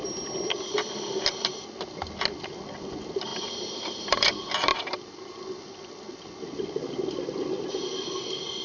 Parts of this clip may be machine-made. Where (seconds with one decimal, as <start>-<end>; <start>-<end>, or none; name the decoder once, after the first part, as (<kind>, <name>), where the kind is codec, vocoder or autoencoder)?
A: 3.3-4.3 (vocoder, BigVGAN v2); 4.7-5.4